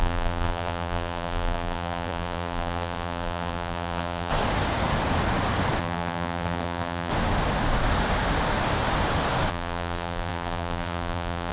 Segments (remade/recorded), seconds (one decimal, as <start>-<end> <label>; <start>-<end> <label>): 0.0-4.3 remade; 4.3-5.8 recorded; 5.8-7.1 remade; 7.1-9.5 recorded; 9.5-11.5 remade